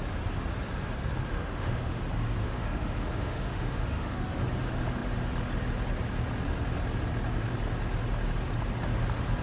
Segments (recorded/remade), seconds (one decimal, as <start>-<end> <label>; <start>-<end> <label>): 0.0-1.3 recorded; 1.3-2.0 remade; 2.0-2.4 recorded; 2.4-4.4 remade; 4.4-9.4 recorded